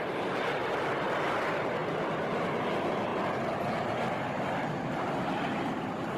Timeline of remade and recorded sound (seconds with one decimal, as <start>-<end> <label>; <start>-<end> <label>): 0.0-6.2 recorded